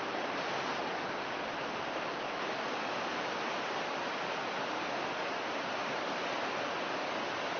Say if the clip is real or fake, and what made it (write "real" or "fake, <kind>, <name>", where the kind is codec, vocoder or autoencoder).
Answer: real